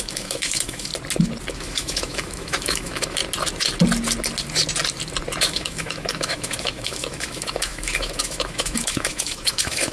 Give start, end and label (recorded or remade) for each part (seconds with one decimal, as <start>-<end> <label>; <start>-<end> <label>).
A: 0.0-0.9 remade; 0.9-1.5 recorded; 1.5-3.2 remade; 3.2-5.4 recorded; 5.4-9.9 remade